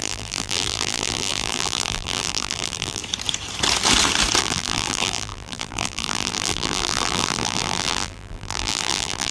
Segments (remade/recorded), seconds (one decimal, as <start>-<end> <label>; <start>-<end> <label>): 0.0-3.0 remade; 3.0-4.4 recorded; 4.4-9.3 remade